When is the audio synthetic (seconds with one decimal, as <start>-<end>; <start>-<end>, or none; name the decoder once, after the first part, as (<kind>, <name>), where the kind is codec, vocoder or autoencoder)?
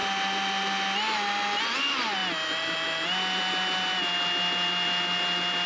none